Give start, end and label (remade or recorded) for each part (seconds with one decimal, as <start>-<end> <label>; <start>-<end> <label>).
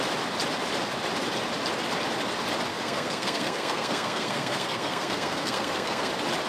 0.0-2.7 recorded; 2.7-6.1 remade; 6.1-6.5 recorded